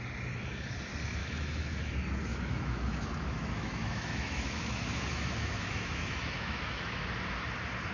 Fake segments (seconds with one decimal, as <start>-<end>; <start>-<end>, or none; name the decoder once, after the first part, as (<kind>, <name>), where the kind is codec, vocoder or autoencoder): 1.2-1.9 (autoencoder, DAC-VAE); 2.3-7.0